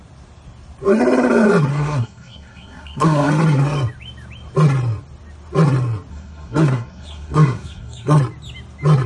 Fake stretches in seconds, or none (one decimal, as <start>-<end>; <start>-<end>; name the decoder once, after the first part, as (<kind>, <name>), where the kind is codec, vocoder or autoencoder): 1.7-3.3 (codec, SNAC); 6.1-8.2